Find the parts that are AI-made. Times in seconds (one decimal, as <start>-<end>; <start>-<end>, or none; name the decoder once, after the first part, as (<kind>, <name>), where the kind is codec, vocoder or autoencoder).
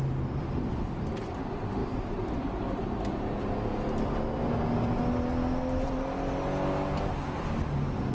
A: none